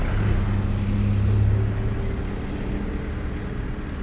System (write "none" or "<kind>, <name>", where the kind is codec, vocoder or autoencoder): none